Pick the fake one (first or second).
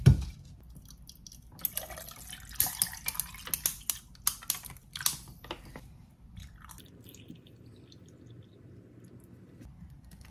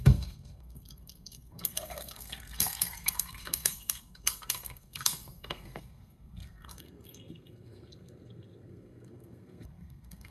second